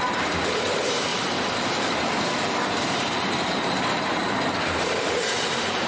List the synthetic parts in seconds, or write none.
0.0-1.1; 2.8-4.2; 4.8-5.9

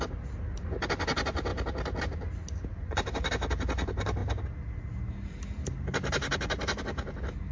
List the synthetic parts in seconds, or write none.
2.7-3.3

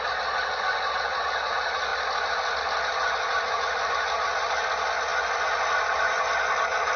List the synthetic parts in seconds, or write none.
none

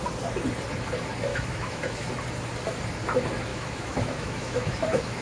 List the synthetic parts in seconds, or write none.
1.3-2.1; 3.5-5.2

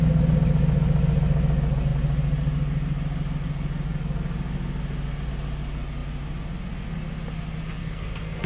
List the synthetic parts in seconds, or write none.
7.8-8.5

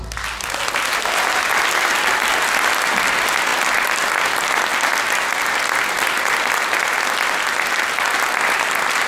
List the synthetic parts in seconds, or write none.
none

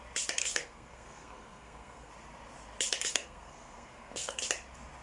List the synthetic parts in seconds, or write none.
0.4-2.1; 3.1-4.4